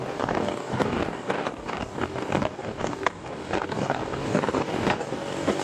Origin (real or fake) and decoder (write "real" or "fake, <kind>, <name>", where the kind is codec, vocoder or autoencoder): fake, codec, DAC